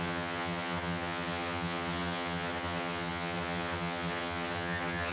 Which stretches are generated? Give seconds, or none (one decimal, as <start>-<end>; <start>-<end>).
0.0-5.1